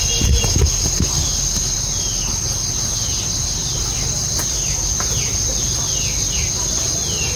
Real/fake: real